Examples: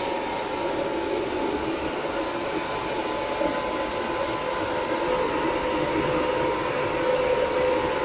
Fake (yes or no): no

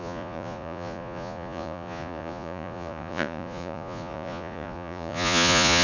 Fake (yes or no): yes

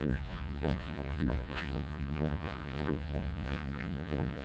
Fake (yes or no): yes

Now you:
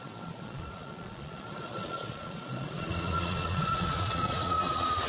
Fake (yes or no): yes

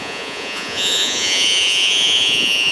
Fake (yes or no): yes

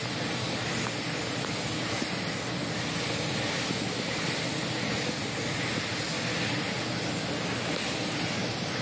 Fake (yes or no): no